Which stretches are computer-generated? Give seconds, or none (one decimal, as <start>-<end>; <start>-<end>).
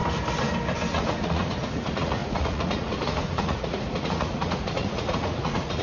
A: 0.9-5.8